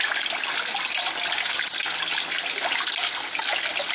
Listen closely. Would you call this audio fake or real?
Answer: real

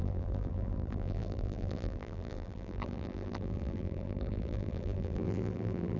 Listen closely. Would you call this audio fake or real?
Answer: fake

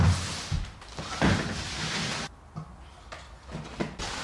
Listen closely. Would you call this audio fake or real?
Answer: real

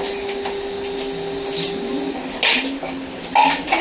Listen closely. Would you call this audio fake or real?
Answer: real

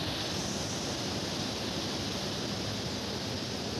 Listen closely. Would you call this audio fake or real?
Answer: real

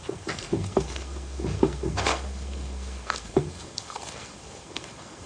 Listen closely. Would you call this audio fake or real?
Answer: fake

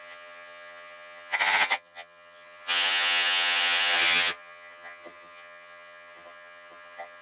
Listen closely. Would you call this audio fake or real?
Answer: fake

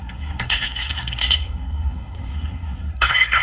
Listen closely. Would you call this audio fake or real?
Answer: fake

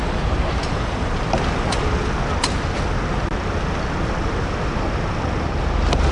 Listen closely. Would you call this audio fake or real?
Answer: real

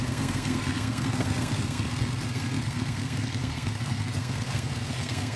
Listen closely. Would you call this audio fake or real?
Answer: fake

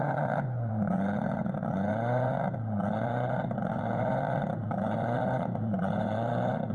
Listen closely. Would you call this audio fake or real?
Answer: fake